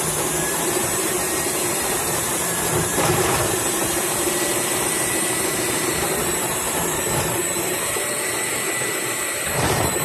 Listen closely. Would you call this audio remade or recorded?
remade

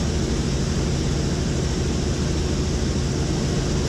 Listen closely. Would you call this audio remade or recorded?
recorded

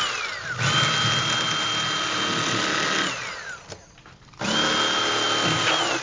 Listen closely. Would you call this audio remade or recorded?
recorded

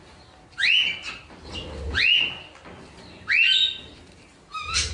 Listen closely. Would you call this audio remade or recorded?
recorded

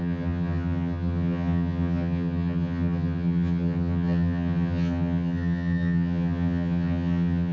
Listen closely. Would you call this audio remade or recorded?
remade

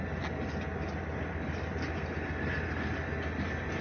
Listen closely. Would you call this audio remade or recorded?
recorded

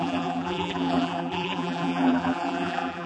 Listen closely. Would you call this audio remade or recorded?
remade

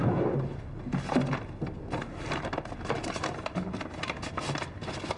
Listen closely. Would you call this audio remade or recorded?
recorded